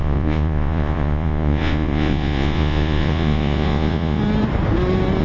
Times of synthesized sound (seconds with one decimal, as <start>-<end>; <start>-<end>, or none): 0.0-4.2